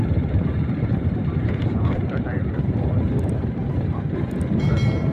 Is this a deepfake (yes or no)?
yes